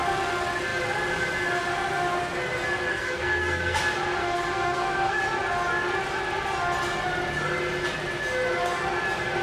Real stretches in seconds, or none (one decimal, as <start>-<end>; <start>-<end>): 0.0-2.9; 3.8-4.2; 5.2-9.4